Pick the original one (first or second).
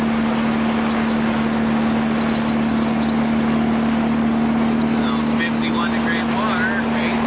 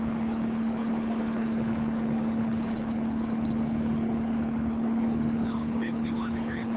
first